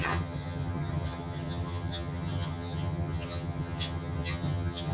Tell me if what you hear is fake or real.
fake